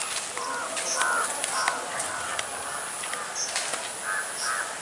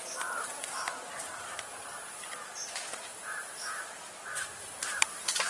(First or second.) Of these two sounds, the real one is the first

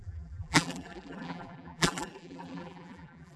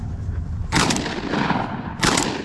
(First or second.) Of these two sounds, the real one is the second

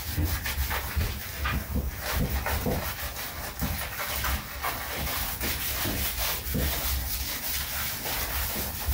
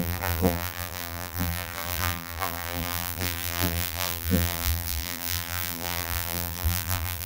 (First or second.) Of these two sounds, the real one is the first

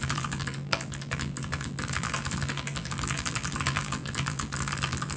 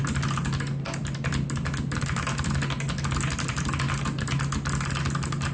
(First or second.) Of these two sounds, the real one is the second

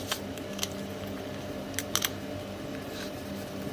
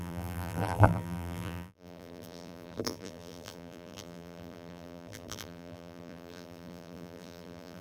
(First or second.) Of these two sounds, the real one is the first